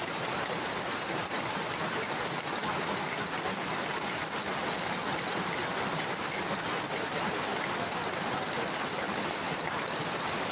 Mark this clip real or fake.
real